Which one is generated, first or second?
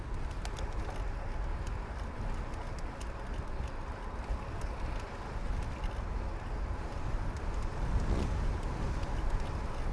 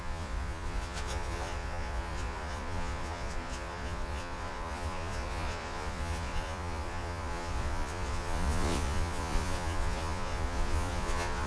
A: second